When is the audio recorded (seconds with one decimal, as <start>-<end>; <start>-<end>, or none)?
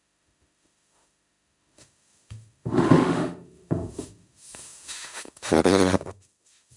none